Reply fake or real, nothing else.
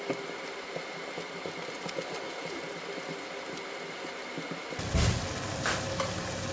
real